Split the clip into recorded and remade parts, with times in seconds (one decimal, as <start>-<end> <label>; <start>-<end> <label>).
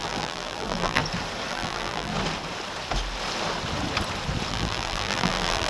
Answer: 0.0-1.0 remade; 1.0-1.5 recorded; 1.5-2.1 remade; 2.1-4.5 recorded; 4.5-5.7 remade